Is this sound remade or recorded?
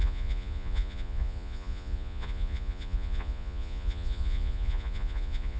remade